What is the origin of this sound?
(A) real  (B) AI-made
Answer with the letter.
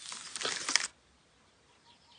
A